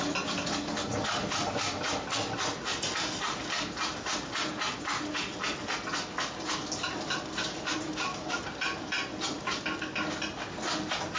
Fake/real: real